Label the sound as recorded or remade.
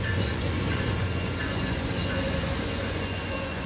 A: remade